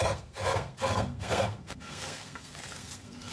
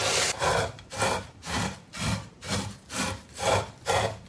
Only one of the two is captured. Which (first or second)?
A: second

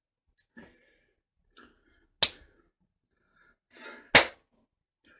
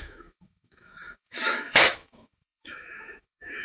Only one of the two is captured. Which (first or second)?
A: first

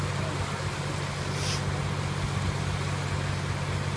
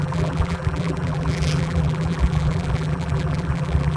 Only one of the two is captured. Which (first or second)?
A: first